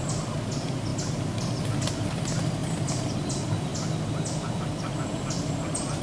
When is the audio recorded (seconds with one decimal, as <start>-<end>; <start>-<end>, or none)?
0.0-6.0